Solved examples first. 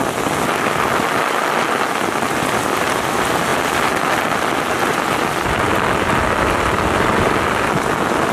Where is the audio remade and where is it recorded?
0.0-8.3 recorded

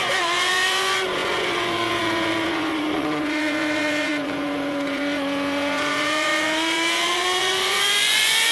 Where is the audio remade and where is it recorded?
0.0-8.5 remade

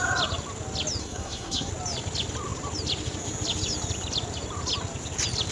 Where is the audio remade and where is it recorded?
0.0-1.0 recorded; 1.0-1.7 remade; 1.7-5.5 recorded

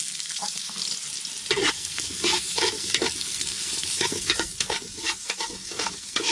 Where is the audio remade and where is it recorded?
0.0-0.8 remade; 0.8-1.7 recorded; 1.7-6.3 remade

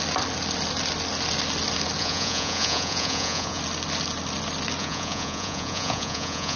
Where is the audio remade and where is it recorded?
0.0-2.0 recorded; 2.0-3.6 remade; 3.6-4.8 recorded; 4.8-6.6 remade

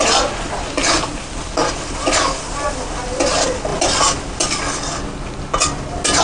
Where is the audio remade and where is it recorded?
0.0-6.2 recorded

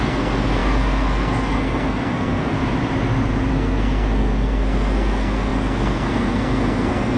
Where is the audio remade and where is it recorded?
0.0-2.6 remade; 2.6-3.5 recorded; 3.5-7.2 remade

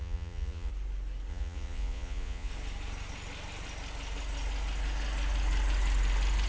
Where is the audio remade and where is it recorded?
0.0-0.7 remade; 0.7-1.3 recorded; 1.3-2.5 remade; 2.5-6.5 recorded